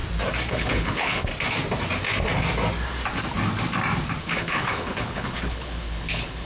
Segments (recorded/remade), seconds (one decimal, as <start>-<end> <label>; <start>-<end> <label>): 0.0-0.5 recorded; 0.5-1.3 remade; 1.3-4.2 recorded; 4.2-6.5 remade